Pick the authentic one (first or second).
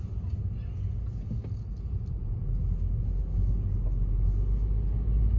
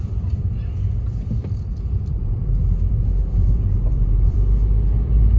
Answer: first